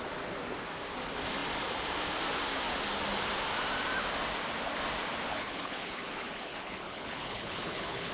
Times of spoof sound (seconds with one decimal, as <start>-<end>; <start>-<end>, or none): 5.3-8.1